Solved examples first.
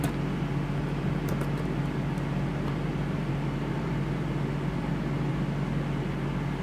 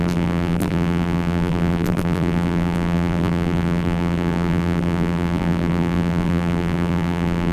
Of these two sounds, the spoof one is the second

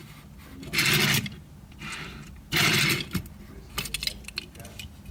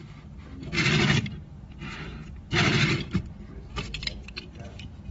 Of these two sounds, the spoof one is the second